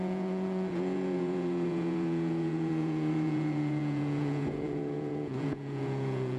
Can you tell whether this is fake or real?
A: fake